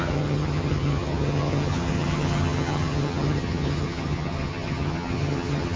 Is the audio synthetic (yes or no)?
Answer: yes